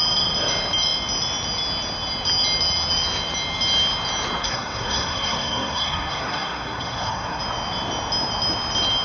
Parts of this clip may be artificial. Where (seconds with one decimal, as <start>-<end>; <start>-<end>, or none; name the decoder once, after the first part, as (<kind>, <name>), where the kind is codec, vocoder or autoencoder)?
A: 4.4-7.4 (codec, SNAC)